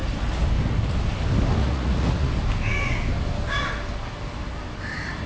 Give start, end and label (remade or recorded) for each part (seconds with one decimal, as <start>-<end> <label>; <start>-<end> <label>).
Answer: 0.0-1.6 recorded; 1.6-2.3 remade; 2.3-5.3 recorded